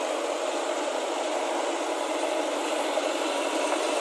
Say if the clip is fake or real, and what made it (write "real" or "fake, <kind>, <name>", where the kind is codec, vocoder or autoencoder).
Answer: real